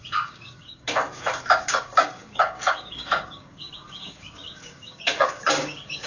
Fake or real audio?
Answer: fake